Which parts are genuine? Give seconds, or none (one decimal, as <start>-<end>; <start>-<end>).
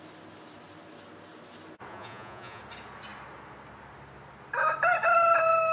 0.0-1.9; 2.6-5.7